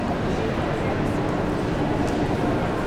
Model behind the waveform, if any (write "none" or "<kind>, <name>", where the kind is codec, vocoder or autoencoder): none